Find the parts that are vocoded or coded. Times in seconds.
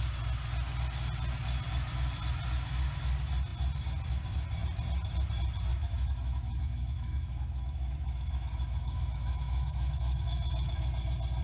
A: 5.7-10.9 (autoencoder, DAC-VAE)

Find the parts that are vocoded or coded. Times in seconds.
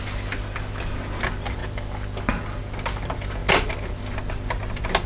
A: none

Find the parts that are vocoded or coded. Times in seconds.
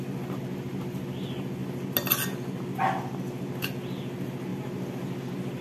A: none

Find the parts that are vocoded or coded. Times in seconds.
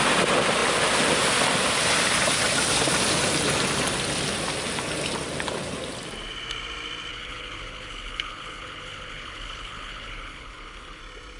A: 7.1-11.0 (codec, HILCodec)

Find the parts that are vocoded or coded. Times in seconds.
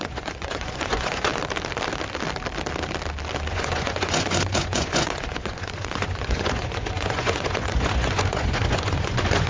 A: 0.0-1.3 (vocoder, Vocos); 3.5-9.5